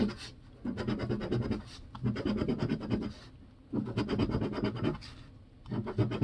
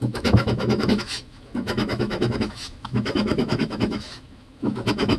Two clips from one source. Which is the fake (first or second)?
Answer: second